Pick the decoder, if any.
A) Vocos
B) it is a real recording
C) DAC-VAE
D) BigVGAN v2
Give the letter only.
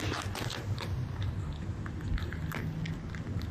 B